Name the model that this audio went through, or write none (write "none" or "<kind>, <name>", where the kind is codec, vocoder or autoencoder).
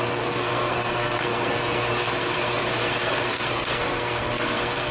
codec, SNAC